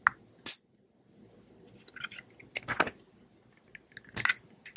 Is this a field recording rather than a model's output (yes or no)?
yes